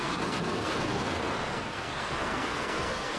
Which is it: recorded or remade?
remade